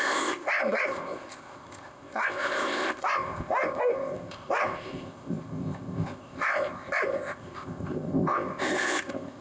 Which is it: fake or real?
fake